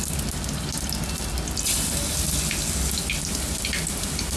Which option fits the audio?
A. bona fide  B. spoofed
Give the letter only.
A